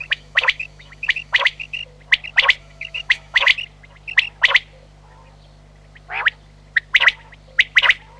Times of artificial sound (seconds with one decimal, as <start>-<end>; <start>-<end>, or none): 0.0-1.8; 2.6-3.5